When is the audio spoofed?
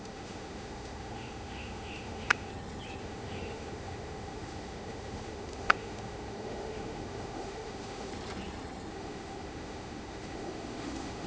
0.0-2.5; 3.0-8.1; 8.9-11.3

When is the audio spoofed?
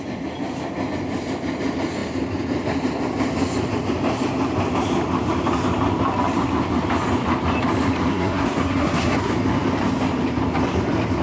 8.1-9.3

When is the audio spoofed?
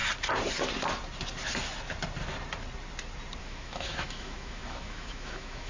3.4-5.7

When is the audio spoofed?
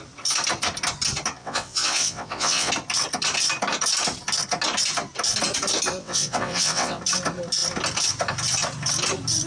1.4-2.7; 6.0-7.0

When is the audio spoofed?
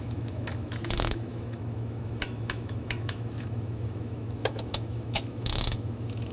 0.0-6.3